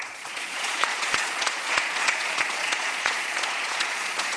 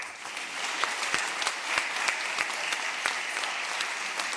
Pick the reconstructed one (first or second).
first